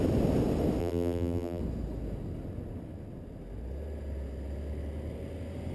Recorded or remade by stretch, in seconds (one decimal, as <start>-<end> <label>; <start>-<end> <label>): 0.0-0.8 recorded; 0.8-1.6 remade; 1.6-5.7 recorded